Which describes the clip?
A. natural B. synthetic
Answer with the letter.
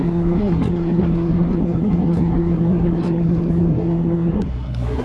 B